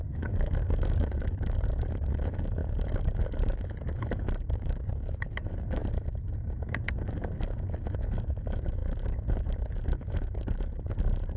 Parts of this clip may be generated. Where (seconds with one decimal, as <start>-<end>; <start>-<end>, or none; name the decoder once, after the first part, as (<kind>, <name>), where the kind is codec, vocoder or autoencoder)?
0.0-5.8 (codec, DAC); 6.6-11.4